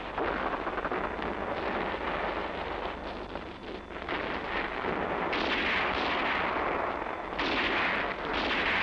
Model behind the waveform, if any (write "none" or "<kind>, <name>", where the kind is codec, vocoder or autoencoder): none